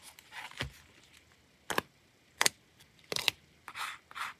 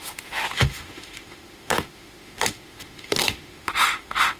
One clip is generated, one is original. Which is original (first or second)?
first